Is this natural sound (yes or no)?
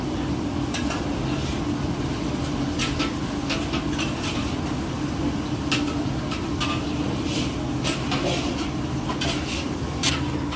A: yes